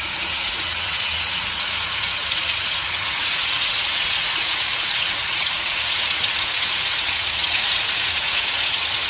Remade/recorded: remade